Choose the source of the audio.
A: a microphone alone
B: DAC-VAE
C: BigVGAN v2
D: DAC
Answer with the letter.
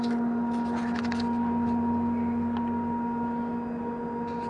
A